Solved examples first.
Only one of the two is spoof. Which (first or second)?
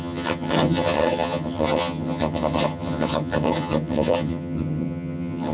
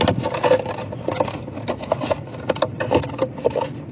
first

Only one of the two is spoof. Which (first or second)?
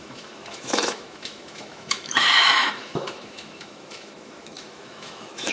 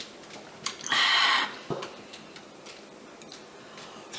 first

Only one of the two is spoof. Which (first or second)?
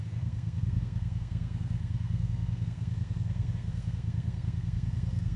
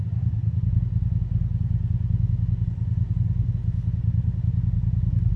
first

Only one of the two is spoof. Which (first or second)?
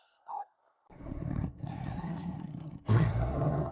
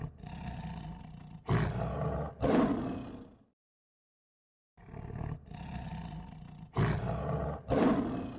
first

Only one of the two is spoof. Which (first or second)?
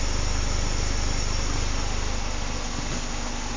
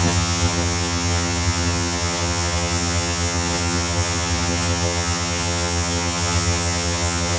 second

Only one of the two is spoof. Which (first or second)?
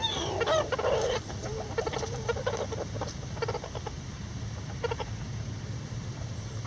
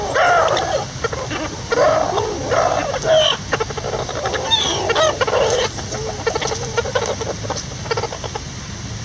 first